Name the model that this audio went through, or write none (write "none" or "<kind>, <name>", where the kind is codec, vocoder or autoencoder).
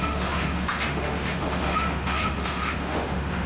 autoencoder, DAC-VAE